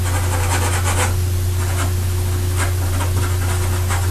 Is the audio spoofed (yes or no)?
no